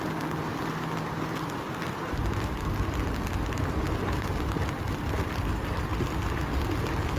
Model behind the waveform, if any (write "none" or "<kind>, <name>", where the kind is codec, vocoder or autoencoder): none